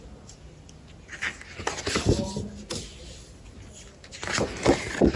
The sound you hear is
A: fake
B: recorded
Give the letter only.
B